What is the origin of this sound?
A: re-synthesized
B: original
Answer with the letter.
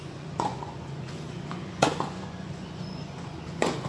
A